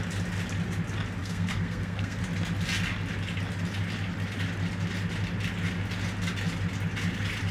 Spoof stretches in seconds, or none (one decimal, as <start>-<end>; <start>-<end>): 1.2-2.2